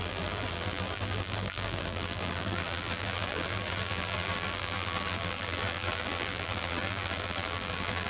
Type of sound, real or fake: fake